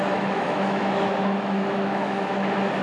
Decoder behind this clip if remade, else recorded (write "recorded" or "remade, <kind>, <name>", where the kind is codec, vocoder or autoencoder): remade, autoencoder, DAC-VAE